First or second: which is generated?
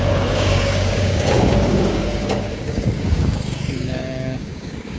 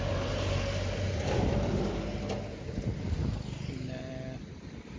first